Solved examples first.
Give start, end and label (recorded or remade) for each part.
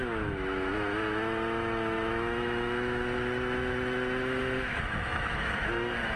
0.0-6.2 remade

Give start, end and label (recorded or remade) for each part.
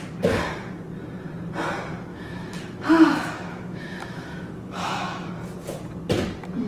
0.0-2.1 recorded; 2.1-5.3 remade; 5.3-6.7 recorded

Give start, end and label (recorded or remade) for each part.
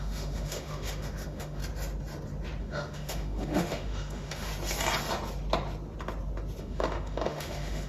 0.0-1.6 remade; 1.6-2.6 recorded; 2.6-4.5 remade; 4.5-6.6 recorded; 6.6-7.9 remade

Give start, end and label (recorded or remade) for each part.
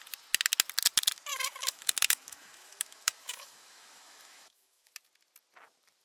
0.0-1.3 recorded; 1.3-4.9 remade; 4.9-6.0 recorded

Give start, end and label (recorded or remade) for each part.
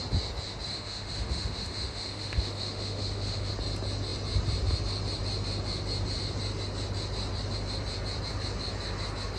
0.0-0.7 recorded; 0.7-3.5 remade; 3.5-9.4 recorded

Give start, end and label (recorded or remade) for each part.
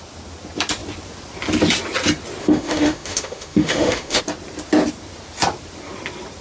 0.0-2.4 recorded; 2.4-4.2 remade; 4.2-6.4 recorded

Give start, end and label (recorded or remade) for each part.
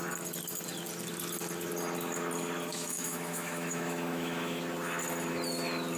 0.0-2.7 recorded; 2.7-4.6 remade; 4.6-6.0 recorded